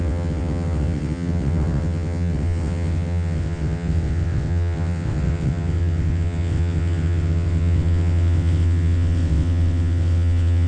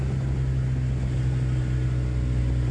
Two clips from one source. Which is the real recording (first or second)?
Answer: second